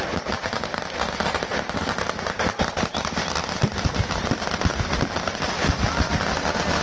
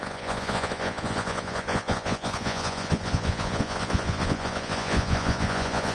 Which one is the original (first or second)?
first